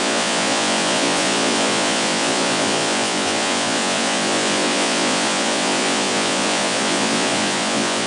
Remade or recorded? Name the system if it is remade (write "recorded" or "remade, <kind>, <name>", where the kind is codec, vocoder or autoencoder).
remade, vocoder, Vocos